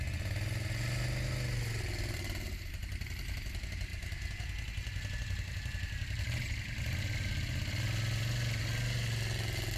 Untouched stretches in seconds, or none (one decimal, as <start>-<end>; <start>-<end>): 0.0-9.8